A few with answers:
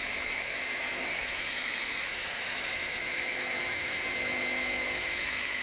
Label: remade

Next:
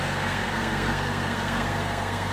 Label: remade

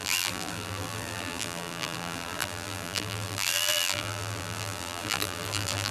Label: remade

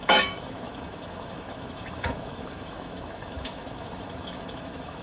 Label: remade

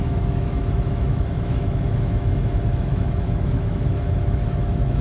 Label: remade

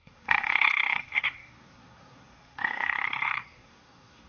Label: remade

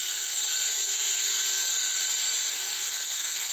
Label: remade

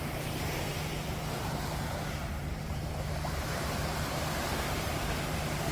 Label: remade